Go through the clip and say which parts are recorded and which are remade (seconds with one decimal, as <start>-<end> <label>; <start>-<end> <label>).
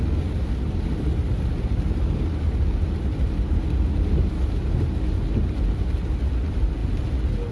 0.0-7.5 recorded